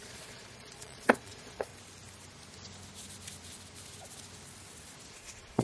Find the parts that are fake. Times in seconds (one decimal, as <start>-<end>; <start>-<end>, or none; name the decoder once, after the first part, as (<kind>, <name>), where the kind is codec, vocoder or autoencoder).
0.0-1.7 (vocoder, Vocos); 5.1-5.6